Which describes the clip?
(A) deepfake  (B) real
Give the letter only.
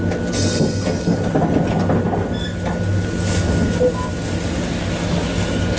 B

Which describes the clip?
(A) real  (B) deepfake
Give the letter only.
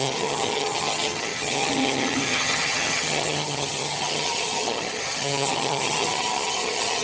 B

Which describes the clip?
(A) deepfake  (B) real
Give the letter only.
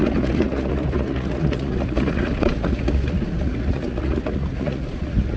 A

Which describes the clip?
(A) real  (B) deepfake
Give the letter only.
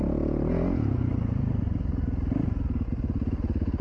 A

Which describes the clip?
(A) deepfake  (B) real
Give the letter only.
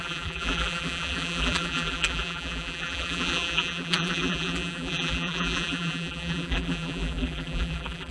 A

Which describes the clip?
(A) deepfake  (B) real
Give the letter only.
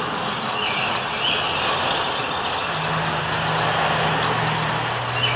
B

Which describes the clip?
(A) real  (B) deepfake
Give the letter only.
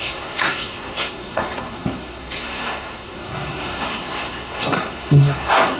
B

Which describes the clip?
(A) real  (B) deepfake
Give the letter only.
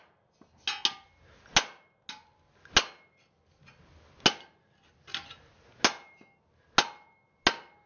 A